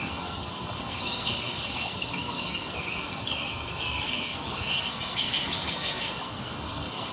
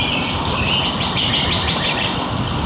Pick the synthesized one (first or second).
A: first